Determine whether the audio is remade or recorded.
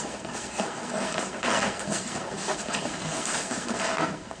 remade